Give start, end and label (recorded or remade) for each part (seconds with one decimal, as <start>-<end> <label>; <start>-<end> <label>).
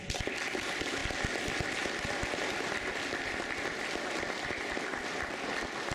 0.0-5.9 recorded